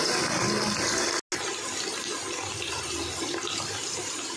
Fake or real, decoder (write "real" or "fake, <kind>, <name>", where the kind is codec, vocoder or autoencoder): real